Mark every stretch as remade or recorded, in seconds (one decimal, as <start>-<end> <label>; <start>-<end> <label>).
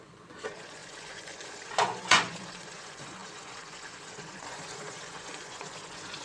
0.0-6.2 remade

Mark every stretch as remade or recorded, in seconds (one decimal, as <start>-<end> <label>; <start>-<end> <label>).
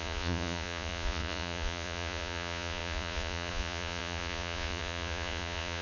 0.0-5.8 remade